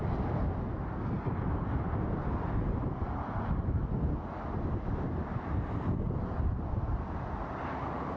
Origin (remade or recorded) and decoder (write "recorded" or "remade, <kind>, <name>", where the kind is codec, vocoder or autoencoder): recorded